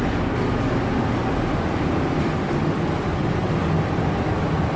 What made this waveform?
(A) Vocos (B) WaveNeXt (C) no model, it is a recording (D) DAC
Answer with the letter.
C